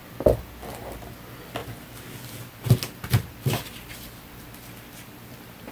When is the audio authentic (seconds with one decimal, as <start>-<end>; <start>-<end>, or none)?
0.0-5.7